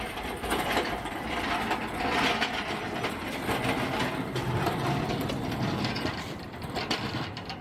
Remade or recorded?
remade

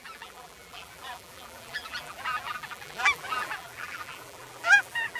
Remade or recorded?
remade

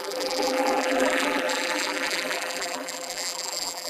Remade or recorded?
remade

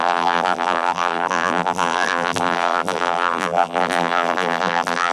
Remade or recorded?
remade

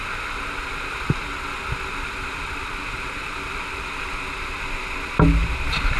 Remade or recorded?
recorded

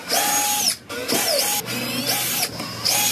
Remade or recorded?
recorded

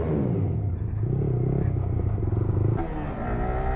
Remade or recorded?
recorded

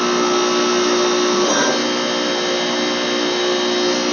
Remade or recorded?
recorded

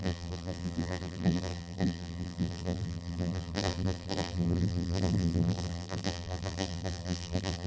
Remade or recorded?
remade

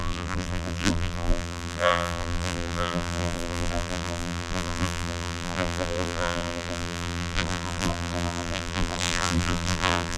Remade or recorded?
remade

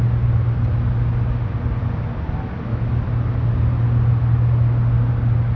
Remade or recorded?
recorded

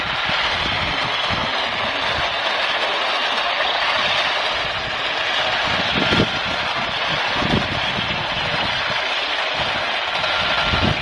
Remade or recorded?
recorded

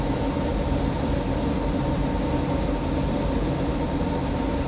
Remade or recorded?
recorded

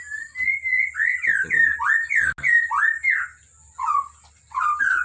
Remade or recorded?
recorded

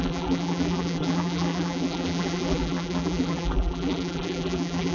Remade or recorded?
remade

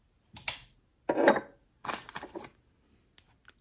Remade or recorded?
recorded